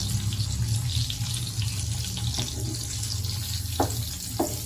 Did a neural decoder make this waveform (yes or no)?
no